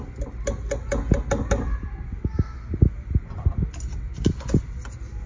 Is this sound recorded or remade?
recorded